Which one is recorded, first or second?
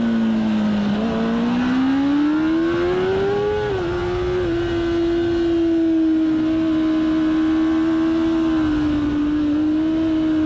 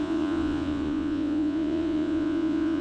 first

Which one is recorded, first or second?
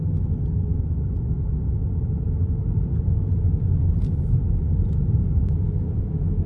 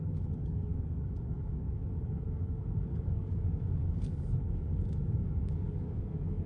first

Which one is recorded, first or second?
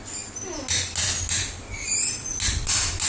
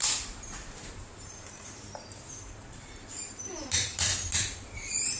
first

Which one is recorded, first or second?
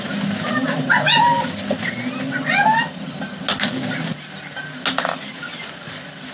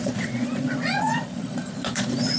first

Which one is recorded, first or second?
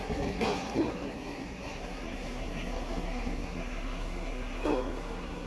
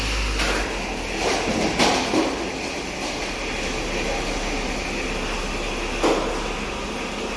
second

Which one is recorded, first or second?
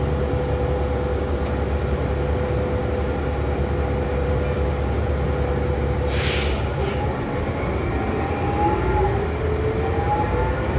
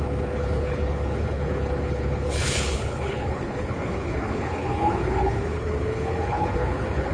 first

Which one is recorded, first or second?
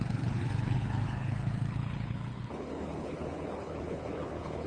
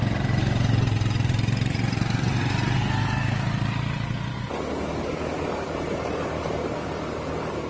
second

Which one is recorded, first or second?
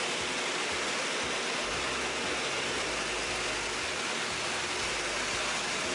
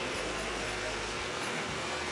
first